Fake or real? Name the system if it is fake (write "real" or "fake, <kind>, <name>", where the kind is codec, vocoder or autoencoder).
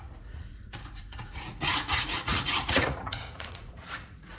fake, vocoder, Vocos